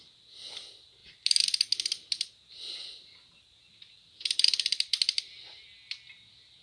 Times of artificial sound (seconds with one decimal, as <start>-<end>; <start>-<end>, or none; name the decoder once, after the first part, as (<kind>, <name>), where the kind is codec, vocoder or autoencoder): 1.0-1.5 (vocoder, BigVGAN v2); 4.0-5.2